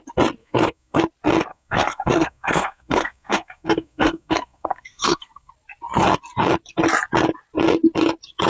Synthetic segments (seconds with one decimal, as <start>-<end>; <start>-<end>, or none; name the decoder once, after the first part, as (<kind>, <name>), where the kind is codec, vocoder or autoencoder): 0.4-1.0 (codec, SNAC); 1.5-5.5